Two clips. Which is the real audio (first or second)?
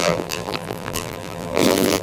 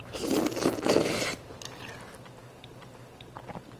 second